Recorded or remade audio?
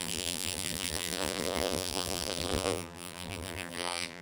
remade